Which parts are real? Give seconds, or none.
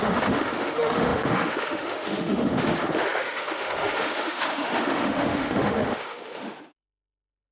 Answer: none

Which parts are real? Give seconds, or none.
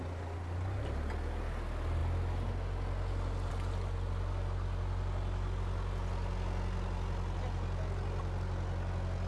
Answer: 0.0-9.3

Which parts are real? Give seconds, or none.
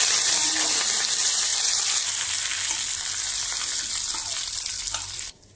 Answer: 0.0-5.6